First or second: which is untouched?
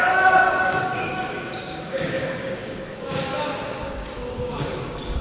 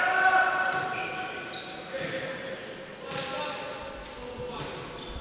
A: second